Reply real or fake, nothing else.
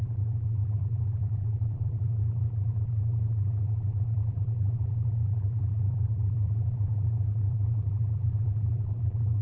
fake